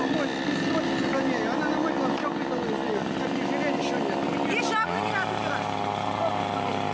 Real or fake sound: real